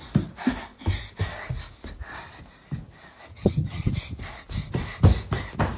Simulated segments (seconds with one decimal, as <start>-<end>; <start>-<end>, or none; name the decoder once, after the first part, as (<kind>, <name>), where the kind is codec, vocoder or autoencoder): 3.3-3.9 (vocoder, HiFi-GAN)